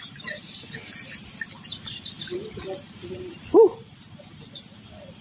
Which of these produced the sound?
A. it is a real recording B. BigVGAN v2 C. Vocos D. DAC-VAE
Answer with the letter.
A